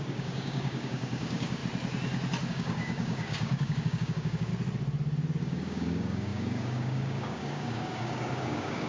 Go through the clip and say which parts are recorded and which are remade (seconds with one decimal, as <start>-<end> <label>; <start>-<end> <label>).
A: 0.0-1.6 remade; 1.6-2.5 recorded; 2.5-4.5 remade; 4.5-5.4 recorded; 5.4-8.9 remade